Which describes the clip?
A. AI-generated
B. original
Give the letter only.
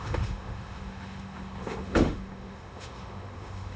A